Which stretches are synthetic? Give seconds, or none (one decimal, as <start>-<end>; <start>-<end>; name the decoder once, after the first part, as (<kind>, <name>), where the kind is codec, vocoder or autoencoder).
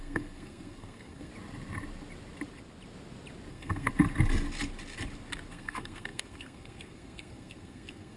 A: 0.0-1.3 (codec, SNAC); 3.5-3.9; 5.5-8.2